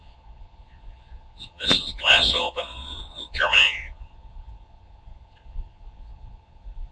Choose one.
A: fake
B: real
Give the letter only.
A